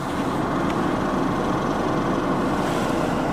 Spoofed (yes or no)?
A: no